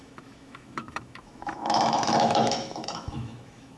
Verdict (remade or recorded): remade